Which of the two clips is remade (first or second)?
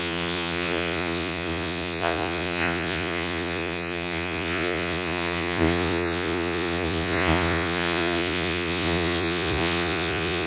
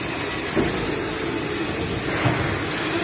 first